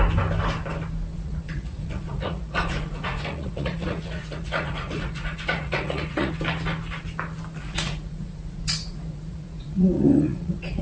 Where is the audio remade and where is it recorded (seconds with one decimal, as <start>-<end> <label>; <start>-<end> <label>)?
0.0-1.1 recorded; 1.1-6.3 remade; 6.3-7.6 recorded; 7.6-10.8 remade